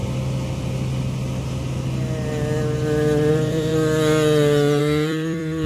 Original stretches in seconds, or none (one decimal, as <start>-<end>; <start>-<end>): 0.0-3.3; 3.7-4.8